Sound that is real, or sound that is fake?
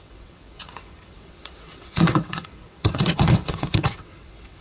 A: fake